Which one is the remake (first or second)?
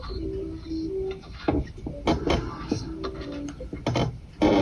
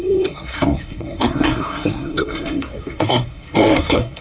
second